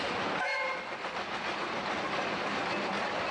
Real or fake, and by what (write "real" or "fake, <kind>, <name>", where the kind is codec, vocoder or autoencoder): real